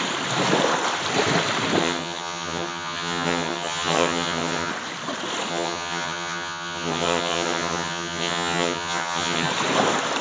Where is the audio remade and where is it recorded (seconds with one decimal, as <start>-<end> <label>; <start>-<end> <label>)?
0.0-1.8 recorded; 1.8-4.7 remade; 4.7-5.5 recorded; 5.5-9.5 remade; 9.5-10.2 recorded